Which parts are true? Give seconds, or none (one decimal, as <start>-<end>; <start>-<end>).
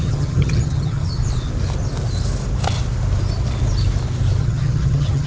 1.2-4.4